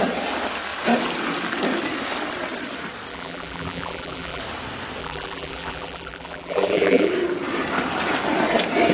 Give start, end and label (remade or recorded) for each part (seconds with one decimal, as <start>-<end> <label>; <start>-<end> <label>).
0.0-3.1 recorded; 3.1-4.4 remade; 4.4-5.0 recorded; 5.0-7.1 remade; 7.1-8.9 recorded